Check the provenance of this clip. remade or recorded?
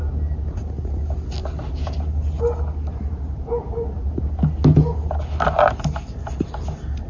recorded